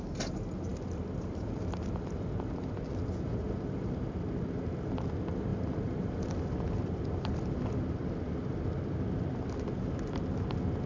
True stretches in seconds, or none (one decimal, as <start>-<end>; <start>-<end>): 0.0-0.7; 2.9-3.3; 4.9-5.5; 8.6-10.9